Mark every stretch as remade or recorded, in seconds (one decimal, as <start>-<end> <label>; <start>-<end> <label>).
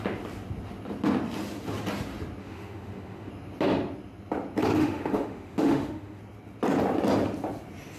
0.0-2.4 recorded; 2.4-3.3 remade; 3.3-4.8 recorded; 4.8-6.2 remade; 6.2-8.0 recorded